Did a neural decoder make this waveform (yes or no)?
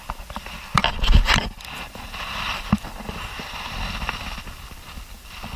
no